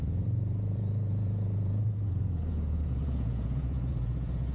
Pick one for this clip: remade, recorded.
remade